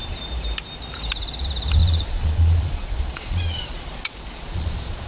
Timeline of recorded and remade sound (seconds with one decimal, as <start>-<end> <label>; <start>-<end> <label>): 0.0-1.8 recorded; 1.8-5.1 remade